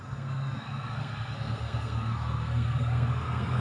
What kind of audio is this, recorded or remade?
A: remade